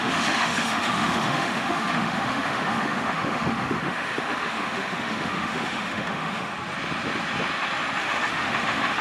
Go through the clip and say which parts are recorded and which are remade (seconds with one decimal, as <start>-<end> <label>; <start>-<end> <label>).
0.0-6.5 remade; 6.5-8.0 recorded; 8.0-9.0 remade